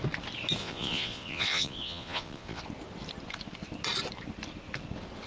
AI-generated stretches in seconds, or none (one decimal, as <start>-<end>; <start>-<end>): 0.6-2.6

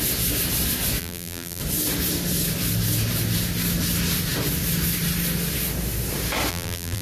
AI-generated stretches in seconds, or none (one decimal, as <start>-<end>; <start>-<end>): 1.0-1.6; 6.5-7.0

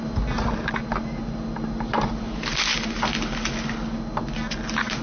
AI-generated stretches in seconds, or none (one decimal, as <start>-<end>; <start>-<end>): none